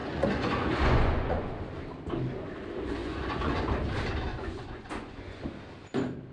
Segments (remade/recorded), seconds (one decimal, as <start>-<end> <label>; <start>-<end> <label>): 0.0-1.5 remade; 1.5-3.0 recorded; 3.0-3.6 remade; 3.6-4.3 recorded; 4.3-5.4 remade; 5.4-6.3 recorded